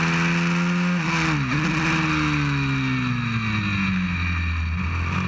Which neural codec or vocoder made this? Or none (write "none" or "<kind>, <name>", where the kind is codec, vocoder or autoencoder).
none